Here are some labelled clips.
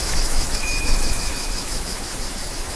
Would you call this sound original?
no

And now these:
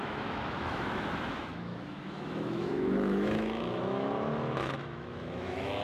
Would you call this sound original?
no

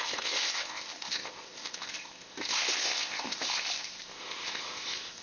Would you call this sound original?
no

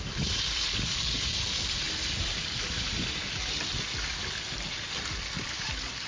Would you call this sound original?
yes